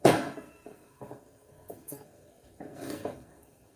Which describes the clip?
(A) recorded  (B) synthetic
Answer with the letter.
B